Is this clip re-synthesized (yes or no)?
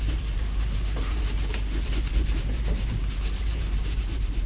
yes